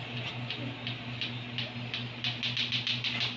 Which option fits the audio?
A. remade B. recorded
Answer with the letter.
B